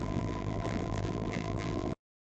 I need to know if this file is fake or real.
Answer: fake